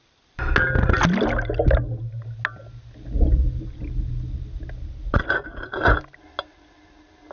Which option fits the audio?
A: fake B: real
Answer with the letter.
B